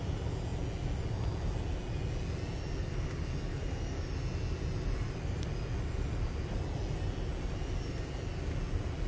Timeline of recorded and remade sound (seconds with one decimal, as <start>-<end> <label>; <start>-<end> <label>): 0.0-9.1 recorded